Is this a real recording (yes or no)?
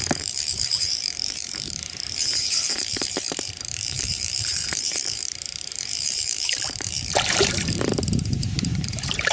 no